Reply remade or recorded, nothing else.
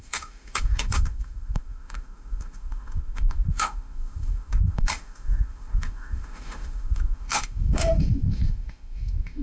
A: remade